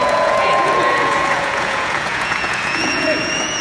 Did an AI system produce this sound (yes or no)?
yes